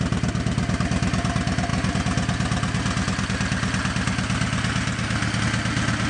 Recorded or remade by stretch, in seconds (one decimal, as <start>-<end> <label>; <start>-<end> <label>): 0.0-6.1 recorded